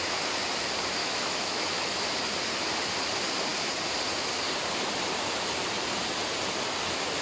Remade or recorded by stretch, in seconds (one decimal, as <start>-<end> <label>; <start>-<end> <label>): 0.0-1.0 recorded; 1.0-2.0 remade; 2.0-7.2 recorded